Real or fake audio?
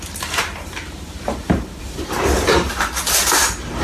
fake